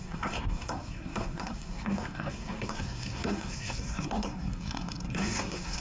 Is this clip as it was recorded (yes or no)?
no